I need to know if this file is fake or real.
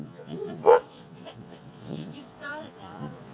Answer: fake